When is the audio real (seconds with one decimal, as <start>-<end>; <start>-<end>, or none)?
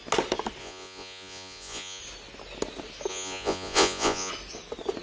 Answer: 0.0-0.6; 2.0-3.1; 4.3-5.0